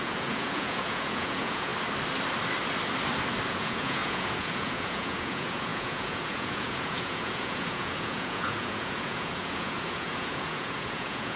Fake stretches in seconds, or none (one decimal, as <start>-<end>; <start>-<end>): 0.0-1.7; 3.5-11.4

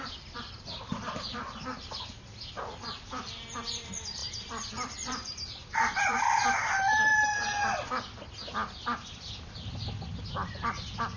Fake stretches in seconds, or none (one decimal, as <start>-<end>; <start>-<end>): 0.0-4.2; 4.7-7.1; 7.6-8.4; 10.5-11.2

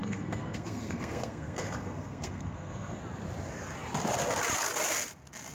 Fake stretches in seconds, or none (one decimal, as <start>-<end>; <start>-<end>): 0.0-3.0

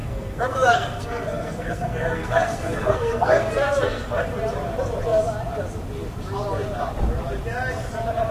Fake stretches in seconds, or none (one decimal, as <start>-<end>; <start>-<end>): 0.0-4.2

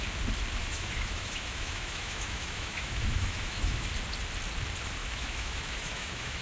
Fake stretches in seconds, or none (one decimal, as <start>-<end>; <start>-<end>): 0.6-3.9; 5.0-6.4